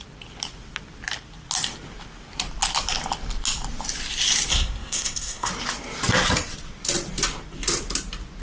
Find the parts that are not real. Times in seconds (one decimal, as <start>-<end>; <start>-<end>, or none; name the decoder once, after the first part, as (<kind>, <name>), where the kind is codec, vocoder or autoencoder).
4.5-5.5 (codec, SNAC)